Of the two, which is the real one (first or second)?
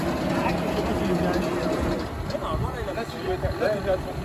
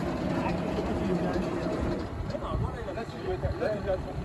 first